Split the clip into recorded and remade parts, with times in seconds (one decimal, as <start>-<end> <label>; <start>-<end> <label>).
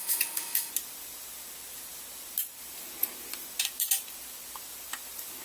0.0-0.7 remade; 0.7-5.4 recorded